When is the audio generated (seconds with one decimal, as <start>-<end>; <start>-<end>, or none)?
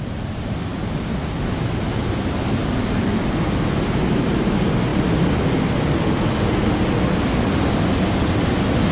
none